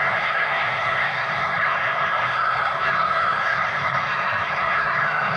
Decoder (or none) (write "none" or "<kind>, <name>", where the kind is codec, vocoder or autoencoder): codec, SNAC